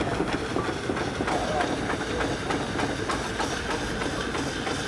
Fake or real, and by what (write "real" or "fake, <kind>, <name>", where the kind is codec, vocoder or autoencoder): real